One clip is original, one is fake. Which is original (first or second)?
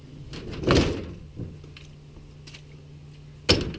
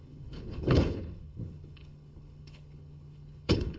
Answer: first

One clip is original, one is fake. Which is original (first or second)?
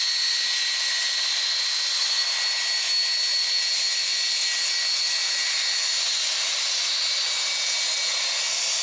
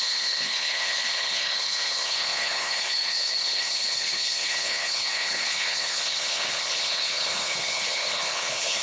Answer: first